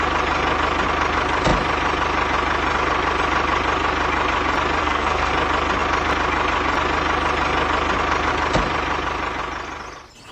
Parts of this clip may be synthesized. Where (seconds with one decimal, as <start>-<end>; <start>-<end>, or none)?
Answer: 4.8-5.3